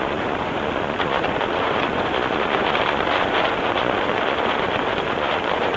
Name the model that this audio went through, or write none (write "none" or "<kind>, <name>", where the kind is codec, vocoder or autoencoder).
vocoder, Vocos